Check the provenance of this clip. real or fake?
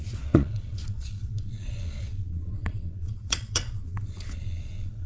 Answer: fake